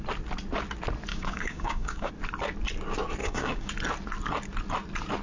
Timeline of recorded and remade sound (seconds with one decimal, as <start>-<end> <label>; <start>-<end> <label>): 0.0-1.1 recorded; 1.1-2.1 remade; 2.1-3.2 recorded; 3.2-3.7 remade; 3.7-5.2 recorded

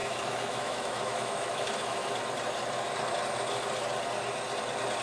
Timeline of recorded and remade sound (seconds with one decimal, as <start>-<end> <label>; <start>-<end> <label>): 0.0-2.0 remade; 2.0-5.0 recorded

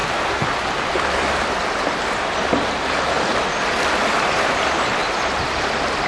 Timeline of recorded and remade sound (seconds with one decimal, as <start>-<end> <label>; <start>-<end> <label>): 0.0-6.1 recorded

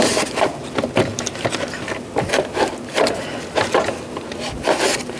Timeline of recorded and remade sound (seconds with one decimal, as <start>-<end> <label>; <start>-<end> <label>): 0.0-5.2 recorded

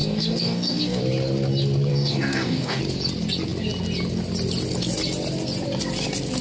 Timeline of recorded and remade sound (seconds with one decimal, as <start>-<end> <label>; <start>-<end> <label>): 0.0-1.0 remade; 1.0-1.9 recorded; 1.9-2.8 remade; 2.8-6.4 recorded

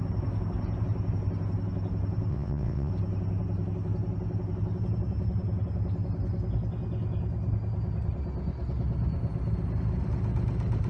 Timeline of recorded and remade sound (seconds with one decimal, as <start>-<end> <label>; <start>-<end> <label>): 0.0-2.3 recorded; 2.3-2.9 remade; 2.9-10.9 recorded